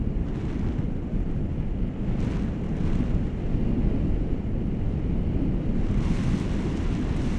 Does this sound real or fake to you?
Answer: real